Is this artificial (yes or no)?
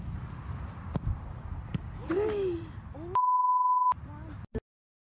no